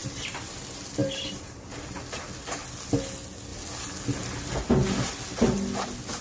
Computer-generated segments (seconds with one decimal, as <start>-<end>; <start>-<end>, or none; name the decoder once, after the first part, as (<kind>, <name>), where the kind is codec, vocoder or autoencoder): 0.0-0.6 (vocoder, BigVGAN v2); 1.0-1.7